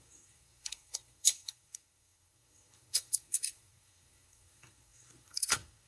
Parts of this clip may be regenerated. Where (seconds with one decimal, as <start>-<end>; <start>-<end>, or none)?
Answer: 0.0-5.9